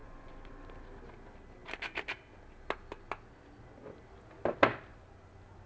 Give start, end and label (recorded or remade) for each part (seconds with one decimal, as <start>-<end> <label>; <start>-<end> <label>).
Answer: 0.0-0.5 remade; 0.5-5.7 recorded